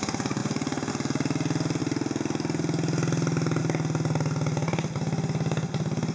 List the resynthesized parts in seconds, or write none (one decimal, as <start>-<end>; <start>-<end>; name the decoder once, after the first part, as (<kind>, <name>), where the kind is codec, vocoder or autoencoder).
none